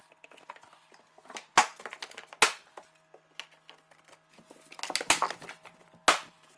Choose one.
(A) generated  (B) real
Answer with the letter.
B